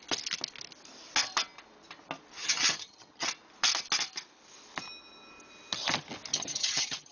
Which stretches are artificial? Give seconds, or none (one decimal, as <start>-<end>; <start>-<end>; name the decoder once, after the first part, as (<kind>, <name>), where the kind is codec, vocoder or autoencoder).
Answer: 2.4-3.3 (vocoder, HiFi-GAN); 6.3-7.1